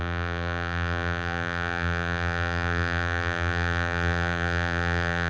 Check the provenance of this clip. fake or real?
fake